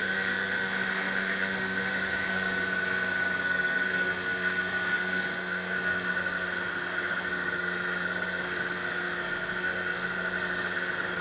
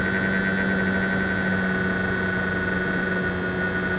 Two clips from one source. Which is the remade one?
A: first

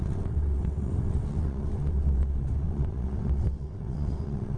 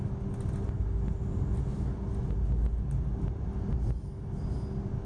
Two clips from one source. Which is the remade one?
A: first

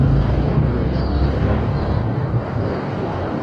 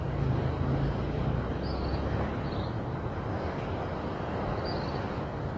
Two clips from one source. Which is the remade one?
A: first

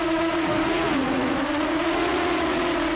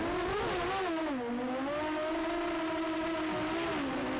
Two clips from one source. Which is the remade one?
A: first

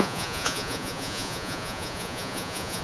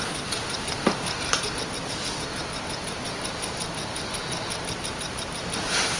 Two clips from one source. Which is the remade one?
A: first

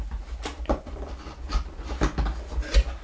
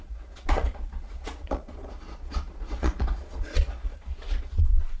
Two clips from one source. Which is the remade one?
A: second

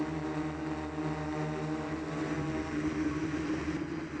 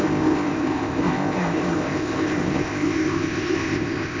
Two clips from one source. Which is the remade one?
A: second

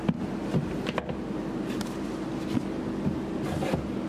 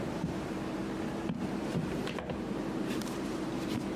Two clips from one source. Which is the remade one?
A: second